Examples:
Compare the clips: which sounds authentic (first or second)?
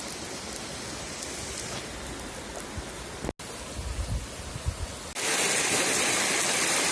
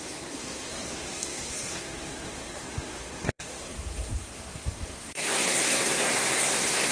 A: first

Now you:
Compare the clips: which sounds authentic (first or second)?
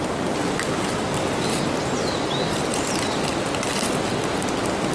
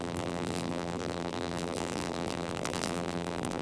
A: first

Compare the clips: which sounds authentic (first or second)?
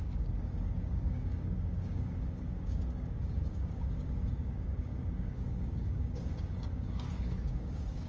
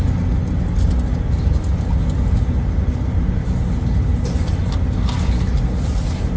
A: second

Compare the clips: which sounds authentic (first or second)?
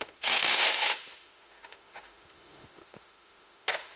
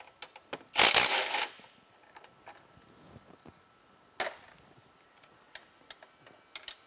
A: second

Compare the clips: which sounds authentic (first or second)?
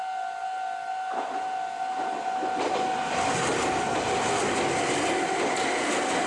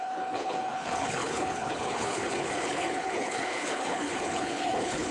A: first